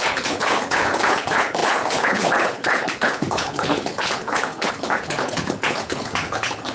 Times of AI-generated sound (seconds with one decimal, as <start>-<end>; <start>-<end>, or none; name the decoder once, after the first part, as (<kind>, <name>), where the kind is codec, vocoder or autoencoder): 0.0-6.7 (codec, HILCodec)